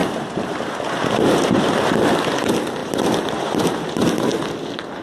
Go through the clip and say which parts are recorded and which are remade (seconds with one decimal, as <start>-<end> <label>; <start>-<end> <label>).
0.0-1.7 remade; 1.7-2.8 recorded; 2.8-3.7 remade; 3.7-5.0 recorded